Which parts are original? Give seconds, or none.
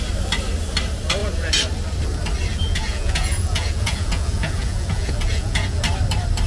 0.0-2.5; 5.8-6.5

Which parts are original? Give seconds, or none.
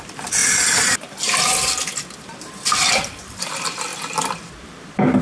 0.4-3.2; 3.9-5.2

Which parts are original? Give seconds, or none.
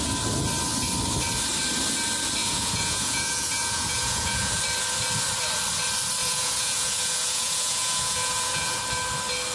0.0-2.4; 4.6-6.2; 8.8-9.5